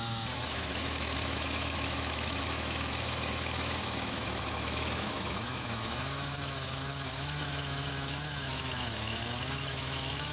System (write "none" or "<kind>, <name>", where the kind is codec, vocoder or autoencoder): autoencoder, DAC-VAE